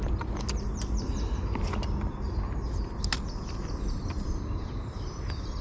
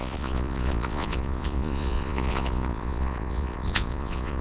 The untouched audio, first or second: first